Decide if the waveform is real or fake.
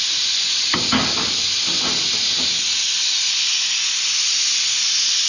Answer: real